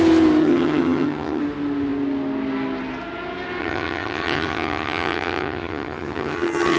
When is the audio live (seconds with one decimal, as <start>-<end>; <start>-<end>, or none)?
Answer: 0.0-0.4; 1.4-3.6